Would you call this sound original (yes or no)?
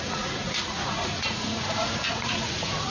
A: no